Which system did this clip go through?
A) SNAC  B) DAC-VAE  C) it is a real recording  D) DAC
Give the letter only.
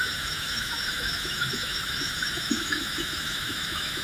B